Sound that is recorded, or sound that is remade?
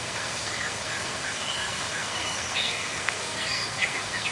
remade